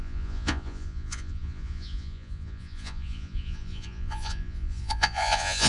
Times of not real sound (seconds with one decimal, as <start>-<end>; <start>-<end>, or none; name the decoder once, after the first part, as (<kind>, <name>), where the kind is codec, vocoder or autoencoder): 0.0-5.7 (vocoder, Vocos)